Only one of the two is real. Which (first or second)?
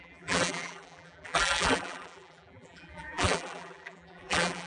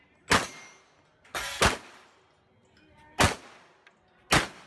second